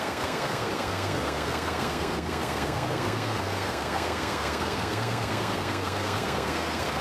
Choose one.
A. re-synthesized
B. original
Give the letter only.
A